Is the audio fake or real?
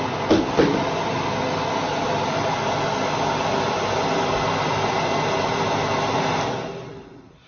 real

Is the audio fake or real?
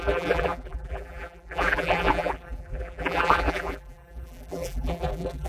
fake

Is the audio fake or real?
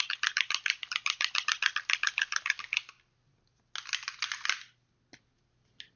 real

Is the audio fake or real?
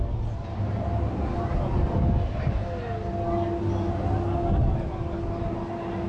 real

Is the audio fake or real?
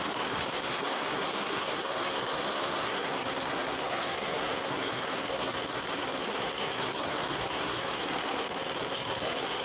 fake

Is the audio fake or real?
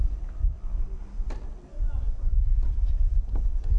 real